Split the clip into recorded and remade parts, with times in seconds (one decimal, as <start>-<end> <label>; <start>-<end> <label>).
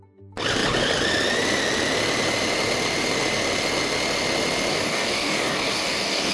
0.0-4.7 recorded; 4.7-6.3 remade